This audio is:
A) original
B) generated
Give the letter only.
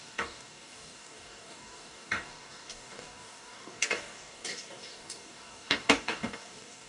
B